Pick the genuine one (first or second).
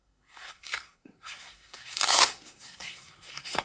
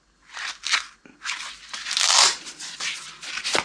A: second